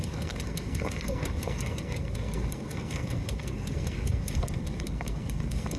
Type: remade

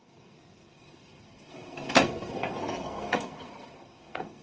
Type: remade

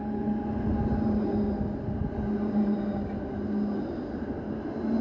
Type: recorded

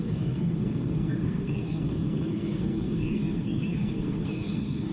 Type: remade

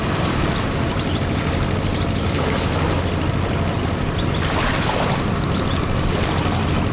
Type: recorded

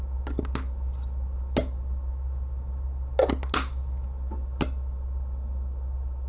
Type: recorded